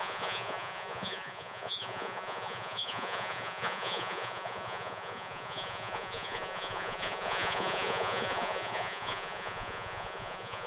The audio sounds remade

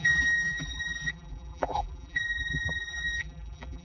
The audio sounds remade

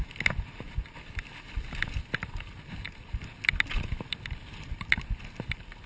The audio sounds recorded